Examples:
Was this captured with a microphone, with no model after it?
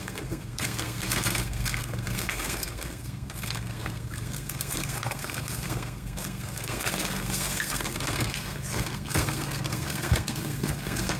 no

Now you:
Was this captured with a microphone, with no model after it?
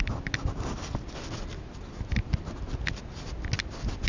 yes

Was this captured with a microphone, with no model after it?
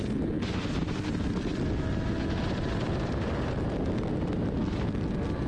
yes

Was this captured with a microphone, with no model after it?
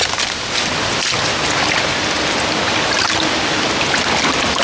yes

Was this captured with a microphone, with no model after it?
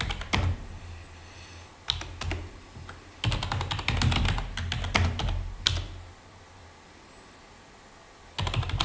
yes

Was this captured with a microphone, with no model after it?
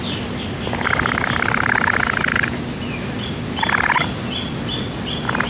yes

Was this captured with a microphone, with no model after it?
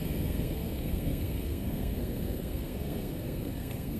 no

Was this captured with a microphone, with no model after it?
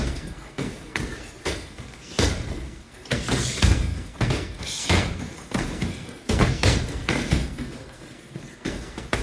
no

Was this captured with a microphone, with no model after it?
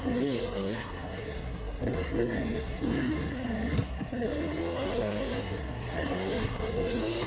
no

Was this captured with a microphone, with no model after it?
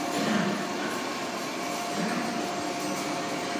yes